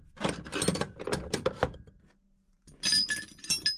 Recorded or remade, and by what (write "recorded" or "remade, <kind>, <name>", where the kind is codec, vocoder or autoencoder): recorded